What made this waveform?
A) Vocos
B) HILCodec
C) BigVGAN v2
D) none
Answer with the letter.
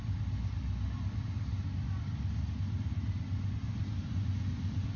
D